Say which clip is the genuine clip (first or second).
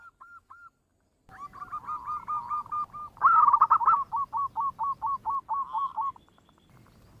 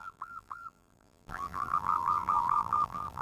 first